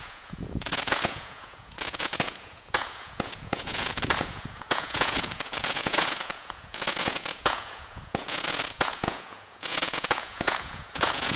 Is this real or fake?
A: fake